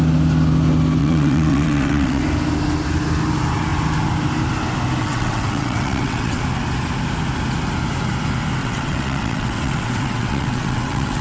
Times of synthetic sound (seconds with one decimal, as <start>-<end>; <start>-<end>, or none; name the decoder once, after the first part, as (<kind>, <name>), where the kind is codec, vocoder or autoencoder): 1.0-2.2 (vocoder, WaveNeXt); 5.0-6.4; 8.6-11.2